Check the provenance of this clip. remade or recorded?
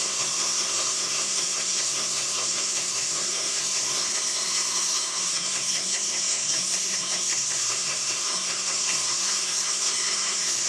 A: remade